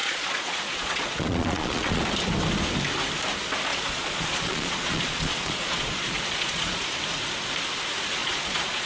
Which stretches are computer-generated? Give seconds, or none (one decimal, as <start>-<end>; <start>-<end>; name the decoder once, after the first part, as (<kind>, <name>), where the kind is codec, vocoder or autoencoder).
0.0-2.0 (vocoder, Vocos); 3.7-6.8; 8.2-8.9